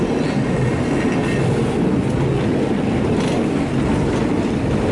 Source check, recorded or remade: recorded